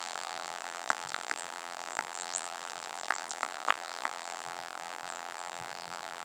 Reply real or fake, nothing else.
fake